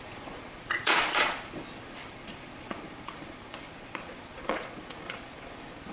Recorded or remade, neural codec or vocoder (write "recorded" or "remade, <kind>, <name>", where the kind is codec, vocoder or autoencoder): remade, vocoder, Vocos